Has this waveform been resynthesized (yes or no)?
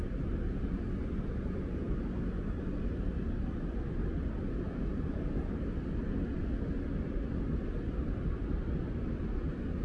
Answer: no